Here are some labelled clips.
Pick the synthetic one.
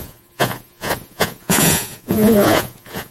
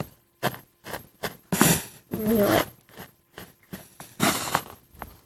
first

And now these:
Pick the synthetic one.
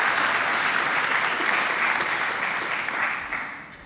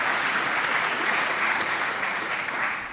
second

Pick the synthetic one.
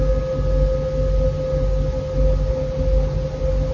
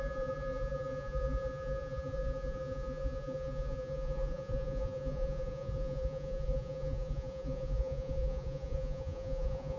second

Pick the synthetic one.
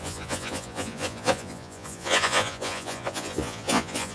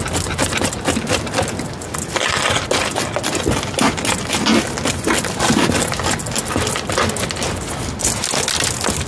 first